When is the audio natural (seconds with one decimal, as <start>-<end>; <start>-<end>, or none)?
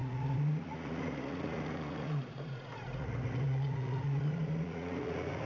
none